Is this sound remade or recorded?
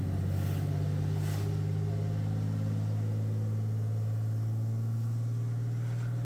recorded